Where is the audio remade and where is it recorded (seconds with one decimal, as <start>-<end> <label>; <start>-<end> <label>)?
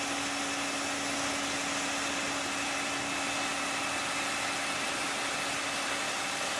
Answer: 0.0-6.6 recorded